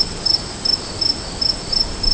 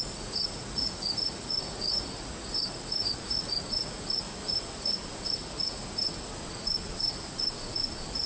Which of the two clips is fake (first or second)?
second